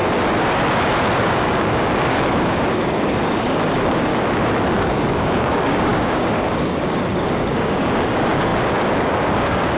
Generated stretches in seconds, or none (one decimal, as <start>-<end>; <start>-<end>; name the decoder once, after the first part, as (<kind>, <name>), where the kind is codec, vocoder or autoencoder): 1.2-4.1 (codec, DAC); 4.8-9.8

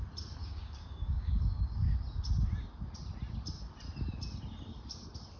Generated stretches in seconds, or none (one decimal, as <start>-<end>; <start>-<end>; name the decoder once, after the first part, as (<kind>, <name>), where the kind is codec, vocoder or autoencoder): 0.4-1.9 (codec, DAC)

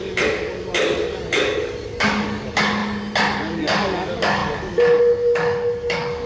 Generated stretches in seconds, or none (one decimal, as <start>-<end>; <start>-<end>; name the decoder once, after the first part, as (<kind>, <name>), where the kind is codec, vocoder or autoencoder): 0.0-2.8 (codec, DAC); 3.4-6.3

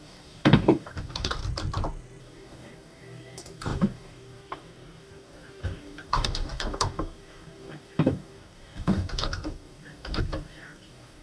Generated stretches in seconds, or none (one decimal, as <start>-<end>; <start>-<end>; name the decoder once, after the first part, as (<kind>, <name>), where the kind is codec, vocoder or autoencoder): 0.0-1.4 (codec, DAC); 2.2-11.2

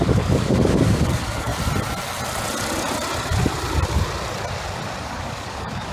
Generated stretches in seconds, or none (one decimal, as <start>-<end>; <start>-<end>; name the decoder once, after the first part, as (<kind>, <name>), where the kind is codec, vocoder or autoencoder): 0.0-1.5 (codec, DAC); 5.0-5.9